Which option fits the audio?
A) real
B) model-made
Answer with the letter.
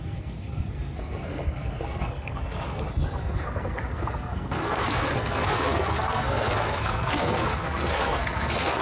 B